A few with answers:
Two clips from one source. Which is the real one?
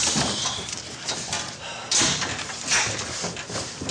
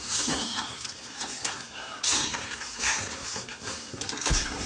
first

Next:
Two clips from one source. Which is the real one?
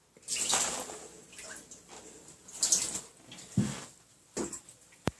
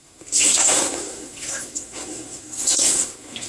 first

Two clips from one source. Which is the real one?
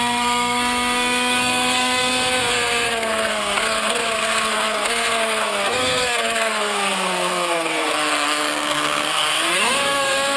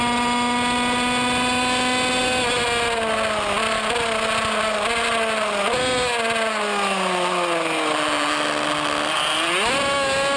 second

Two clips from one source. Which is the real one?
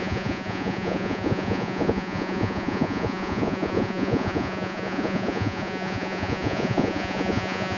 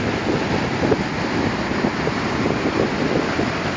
second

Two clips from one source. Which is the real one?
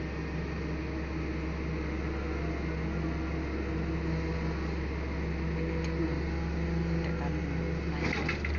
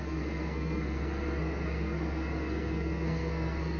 first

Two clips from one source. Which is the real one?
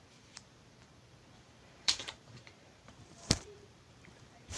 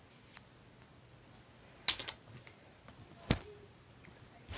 second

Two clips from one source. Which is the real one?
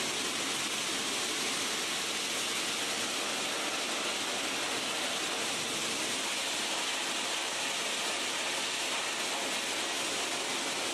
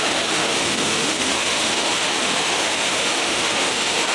first